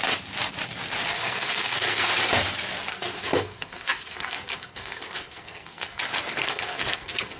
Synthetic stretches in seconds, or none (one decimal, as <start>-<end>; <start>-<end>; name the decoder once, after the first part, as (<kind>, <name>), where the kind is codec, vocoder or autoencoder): 1.1-2.1 (codec, SNAC); 2.9-6.0; 6.4-7.4